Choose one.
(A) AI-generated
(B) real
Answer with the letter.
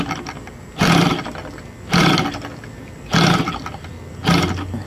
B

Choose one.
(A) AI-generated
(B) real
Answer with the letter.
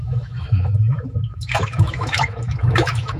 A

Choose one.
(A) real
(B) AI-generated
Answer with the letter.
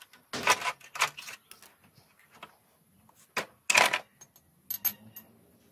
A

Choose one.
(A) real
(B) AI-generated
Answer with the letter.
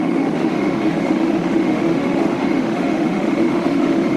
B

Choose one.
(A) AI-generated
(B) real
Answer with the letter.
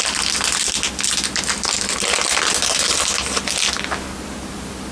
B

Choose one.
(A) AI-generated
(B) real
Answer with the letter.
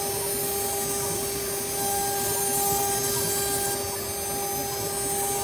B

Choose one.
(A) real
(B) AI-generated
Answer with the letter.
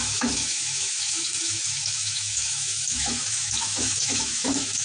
B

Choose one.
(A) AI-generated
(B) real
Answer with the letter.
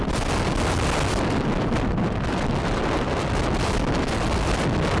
B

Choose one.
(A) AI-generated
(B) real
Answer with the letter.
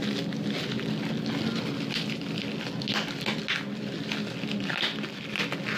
B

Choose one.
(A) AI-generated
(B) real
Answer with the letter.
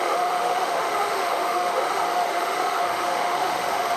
A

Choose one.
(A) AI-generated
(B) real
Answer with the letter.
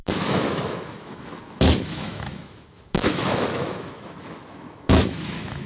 A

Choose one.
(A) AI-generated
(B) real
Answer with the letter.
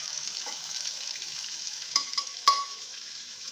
A